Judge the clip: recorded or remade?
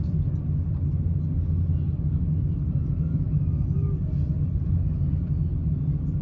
recorded